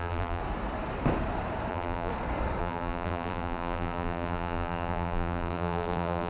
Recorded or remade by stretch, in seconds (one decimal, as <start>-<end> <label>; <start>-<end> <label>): 0.0-0.4 remade; 0.4-1.7 recorded; 1.7-2.1 remade; 2.1-2.6 recorded; 2.6-6.3 remade